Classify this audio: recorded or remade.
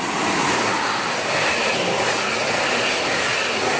recorded